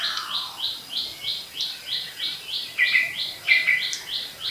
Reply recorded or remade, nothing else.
recorded